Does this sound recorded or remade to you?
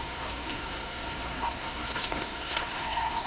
remade